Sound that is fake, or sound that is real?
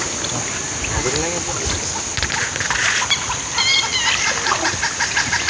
real